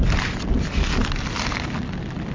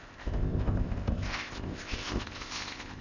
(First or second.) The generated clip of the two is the second